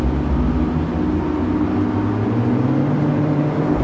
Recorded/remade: recorded